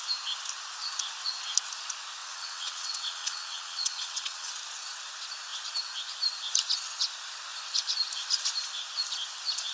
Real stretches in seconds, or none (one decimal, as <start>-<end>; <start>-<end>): 0.0-2.2; 4.5-9.7